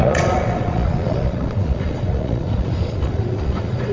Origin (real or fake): fake